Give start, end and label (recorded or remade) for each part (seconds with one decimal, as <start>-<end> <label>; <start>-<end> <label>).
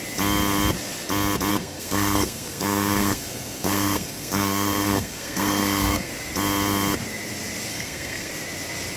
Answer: 0.0-1.5 recorded; 1.5-6.1 remade; 6.1-7.7 recorded; 7.7-8.3 remade; 8.3-9.0 recorded